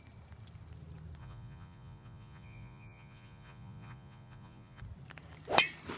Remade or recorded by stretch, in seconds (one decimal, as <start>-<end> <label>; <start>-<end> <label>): 0.0-1.2 recorded; 1.2-4.8 remade; 4.8-6.0 recorded